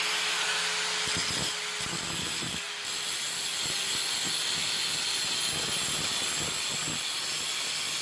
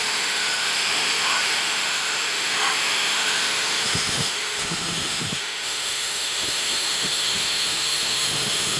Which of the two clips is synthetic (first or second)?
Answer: second